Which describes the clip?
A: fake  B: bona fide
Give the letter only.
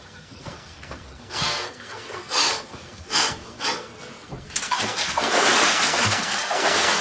A